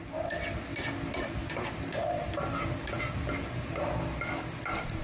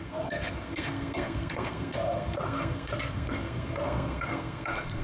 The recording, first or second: first